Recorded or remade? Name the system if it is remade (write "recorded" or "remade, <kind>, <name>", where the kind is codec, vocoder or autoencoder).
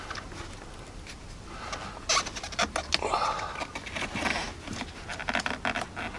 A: recorded